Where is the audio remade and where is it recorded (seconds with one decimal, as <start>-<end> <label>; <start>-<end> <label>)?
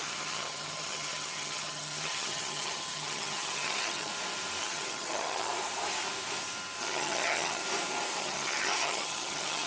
0.0-4.1 remade; 4.1-4.6 recorded; 4.6-5.5 remade; 5.5-6.8 recorded; 6.8-7.6 remade; 7.6-8.2 recorded; 8.2-9.7 remade